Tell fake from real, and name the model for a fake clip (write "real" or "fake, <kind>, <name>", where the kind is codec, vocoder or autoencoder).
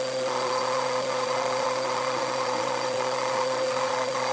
fake, vocoder, Vocos